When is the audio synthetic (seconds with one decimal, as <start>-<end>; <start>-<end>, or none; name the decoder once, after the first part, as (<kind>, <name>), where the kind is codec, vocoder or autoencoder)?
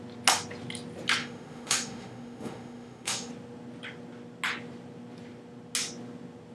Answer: 1.2-3.3 (autoencoder, DAC-VAE)